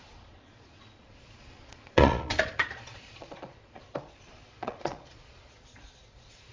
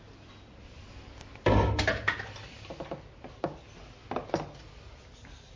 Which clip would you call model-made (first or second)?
first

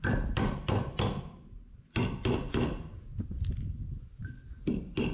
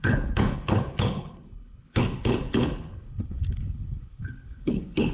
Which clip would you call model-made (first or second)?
second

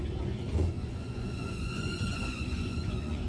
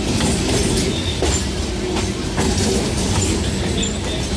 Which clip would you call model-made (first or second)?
first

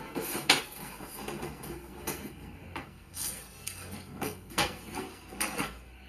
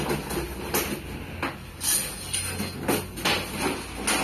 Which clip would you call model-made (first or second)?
first